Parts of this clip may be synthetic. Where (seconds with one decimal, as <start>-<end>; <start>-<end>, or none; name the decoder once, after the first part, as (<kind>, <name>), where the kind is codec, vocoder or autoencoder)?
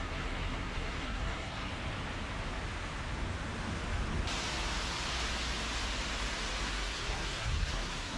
0.0-1.7 (codec, SNAC); 6.6-8.2